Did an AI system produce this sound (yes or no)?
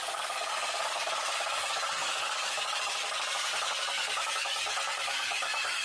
yes